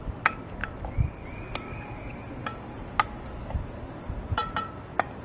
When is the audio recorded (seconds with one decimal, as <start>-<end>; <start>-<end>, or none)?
0.0-5.2